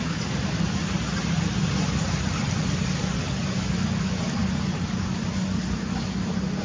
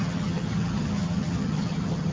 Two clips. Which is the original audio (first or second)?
first